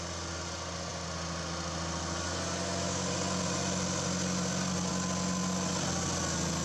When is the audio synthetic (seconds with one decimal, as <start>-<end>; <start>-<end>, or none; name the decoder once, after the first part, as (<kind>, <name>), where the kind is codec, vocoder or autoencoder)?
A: none